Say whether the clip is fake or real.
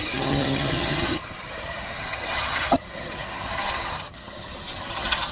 fake